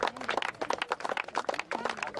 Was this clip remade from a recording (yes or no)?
no